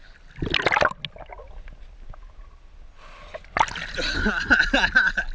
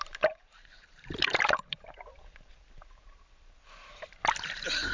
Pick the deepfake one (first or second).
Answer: second